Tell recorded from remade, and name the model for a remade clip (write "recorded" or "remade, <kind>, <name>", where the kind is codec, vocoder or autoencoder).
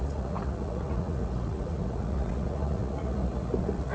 remade, vocoder, Vocos